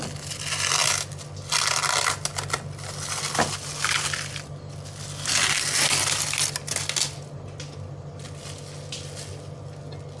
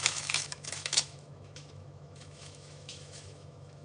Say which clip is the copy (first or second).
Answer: second